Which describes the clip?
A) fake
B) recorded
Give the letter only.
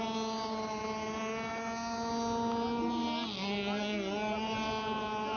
B